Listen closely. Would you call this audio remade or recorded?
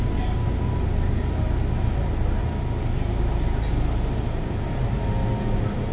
recorded